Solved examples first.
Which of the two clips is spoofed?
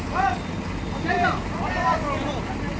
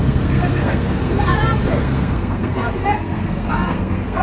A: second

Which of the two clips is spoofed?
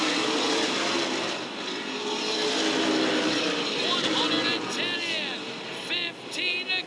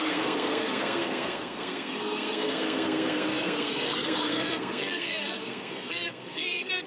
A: second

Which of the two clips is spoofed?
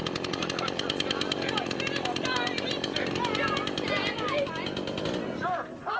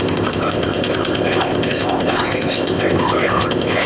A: second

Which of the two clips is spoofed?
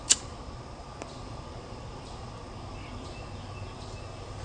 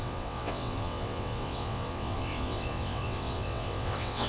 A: second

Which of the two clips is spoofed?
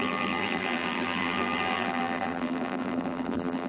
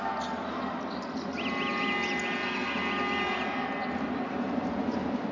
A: first